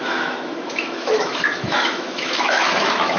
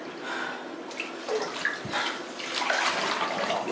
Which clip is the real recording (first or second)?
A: second